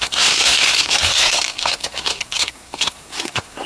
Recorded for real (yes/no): no